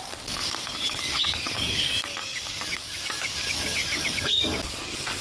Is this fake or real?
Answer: fake